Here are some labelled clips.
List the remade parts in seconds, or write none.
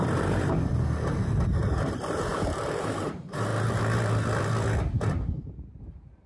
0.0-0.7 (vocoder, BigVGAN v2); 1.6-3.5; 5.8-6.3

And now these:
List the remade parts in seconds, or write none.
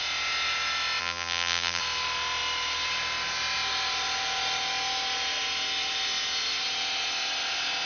1.0-1.8 (vocoder, BigVGAN v2)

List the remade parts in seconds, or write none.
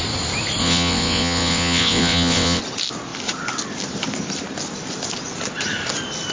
0.6-2.6 (vocoder, WaveNeXt)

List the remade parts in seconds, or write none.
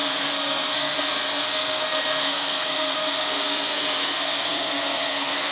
0.0-5.5 (codec, SNAC)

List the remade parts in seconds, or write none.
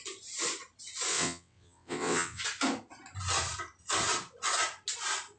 1.1-2.4 (vocoder, WaveNeXt)